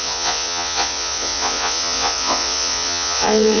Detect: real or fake fake